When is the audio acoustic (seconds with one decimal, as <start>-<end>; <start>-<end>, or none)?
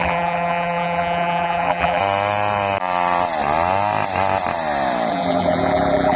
2.0-5.1